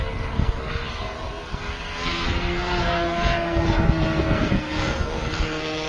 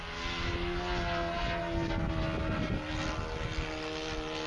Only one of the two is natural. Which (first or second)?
second